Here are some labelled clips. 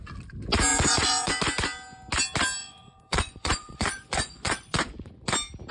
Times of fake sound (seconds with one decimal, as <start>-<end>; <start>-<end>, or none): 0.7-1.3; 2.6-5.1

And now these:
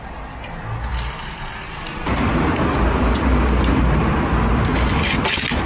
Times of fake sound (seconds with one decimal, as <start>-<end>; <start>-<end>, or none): none

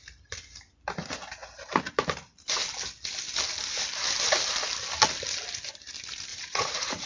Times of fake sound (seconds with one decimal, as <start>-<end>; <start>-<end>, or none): 6.3-7.1

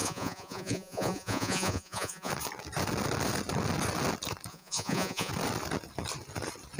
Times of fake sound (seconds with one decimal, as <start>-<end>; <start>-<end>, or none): 0.0-2.3; 4.5-5.3

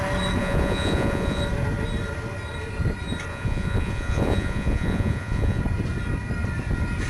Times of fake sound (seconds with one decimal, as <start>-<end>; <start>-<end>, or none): 0.4-1.4; 3.3-5.6